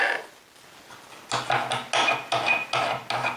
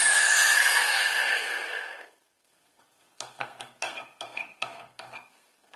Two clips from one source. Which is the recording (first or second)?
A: first